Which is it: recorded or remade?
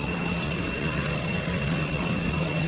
remade